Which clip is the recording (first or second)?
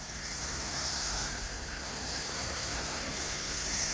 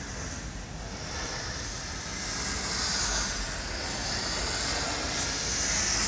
second